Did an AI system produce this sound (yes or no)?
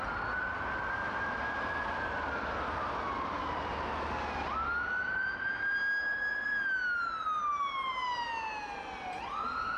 no